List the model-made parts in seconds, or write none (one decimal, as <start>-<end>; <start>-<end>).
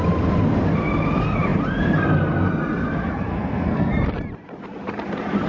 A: 3.3-3.9